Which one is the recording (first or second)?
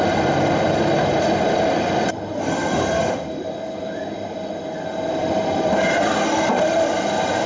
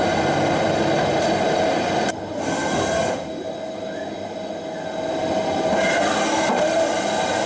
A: second